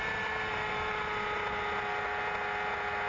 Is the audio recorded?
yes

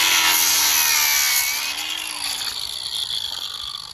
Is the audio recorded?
yes